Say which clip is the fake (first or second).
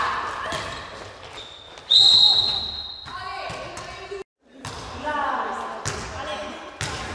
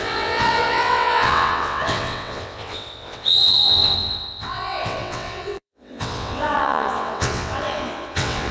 second